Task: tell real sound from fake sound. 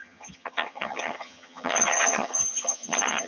fake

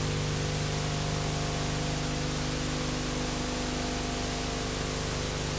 real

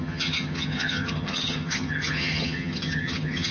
fake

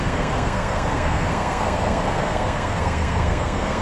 fake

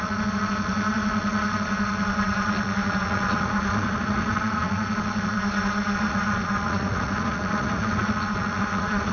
fake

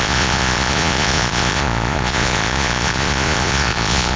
fake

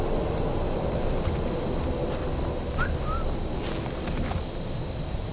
real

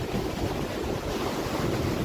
fake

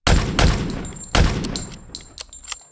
real